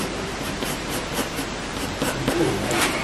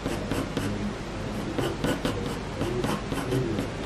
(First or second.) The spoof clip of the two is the first